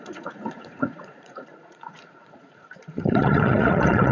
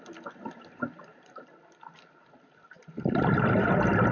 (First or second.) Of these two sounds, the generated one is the first